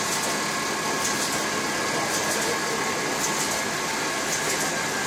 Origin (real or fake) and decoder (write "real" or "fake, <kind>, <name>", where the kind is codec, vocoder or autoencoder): real